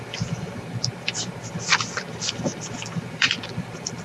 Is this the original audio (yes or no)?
no